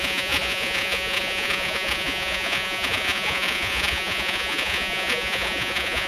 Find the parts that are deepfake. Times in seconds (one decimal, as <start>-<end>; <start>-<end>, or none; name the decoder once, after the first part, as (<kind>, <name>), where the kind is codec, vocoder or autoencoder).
0.0-6.1 (vocoder, Vocos)